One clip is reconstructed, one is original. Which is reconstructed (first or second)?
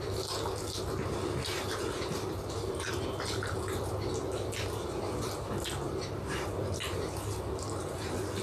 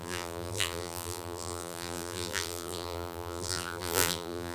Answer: second